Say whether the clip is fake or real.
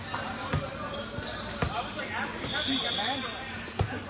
fake